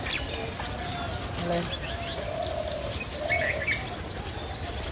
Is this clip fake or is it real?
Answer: real